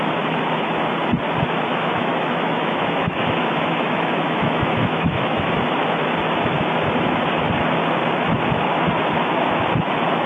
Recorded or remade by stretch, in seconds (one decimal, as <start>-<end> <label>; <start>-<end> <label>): 0.0-1.7 recorded; 1.7-5.5 remade; 5.5-10.3 recorded